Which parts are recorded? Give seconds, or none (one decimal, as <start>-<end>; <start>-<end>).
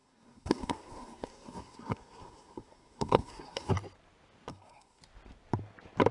3.7-4.5; 5.0-6.1